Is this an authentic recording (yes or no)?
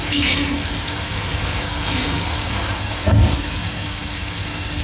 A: no